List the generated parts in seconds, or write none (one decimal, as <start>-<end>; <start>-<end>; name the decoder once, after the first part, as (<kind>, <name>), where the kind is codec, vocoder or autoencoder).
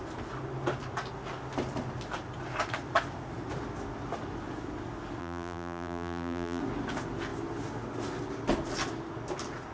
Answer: 5.2-6.6 (vocoder, BigVGAN v2)